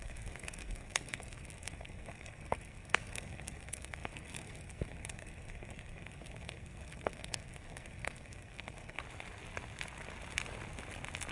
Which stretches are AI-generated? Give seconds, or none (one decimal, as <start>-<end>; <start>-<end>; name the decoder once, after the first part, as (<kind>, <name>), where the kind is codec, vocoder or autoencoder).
0.0-9.0 (codec, SNAC)